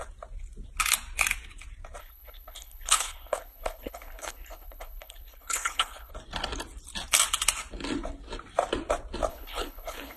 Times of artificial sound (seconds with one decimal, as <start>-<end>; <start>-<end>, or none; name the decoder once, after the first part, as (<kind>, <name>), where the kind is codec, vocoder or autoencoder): 2.0-6.1 (codec, HILCodec); 9.3-10.2